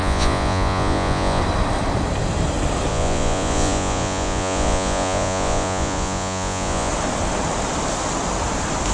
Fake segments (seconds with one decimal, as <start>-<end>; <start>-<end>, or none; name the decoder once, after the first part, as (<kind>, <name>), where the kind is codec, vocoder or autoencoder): 0.0-1.4 (vocoder, Vocos); 2.9-6.9